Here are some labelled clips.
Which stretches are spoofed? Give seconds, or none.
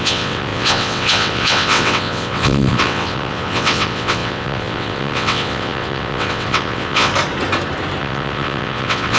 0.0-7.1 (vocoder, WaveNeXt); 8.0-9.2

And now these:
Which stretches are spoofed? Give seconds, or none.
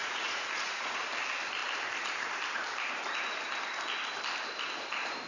0.0-1.1 (vocoder, Vocos)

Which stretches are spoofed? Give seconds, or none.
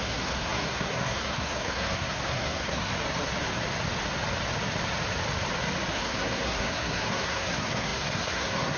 0.0-2.9 (codec, SNAC); 5.9-8.8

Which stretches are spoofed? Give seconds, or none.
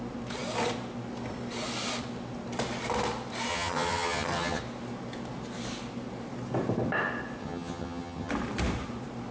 3.5-4.6 (vocoder, HiFi-GAN); 7.4-8.3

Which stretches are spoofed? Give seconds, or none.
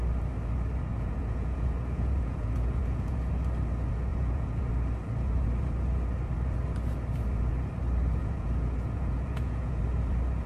0.9-3.3 (vocoder, Vocos); 4.1-4.7; 8.2-9.8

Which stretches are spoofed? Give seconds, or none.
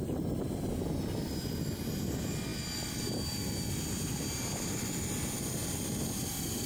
none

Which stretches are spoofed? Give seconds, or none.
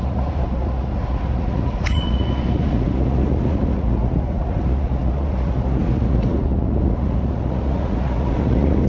0.0-8.9 (vocoder, Vocos)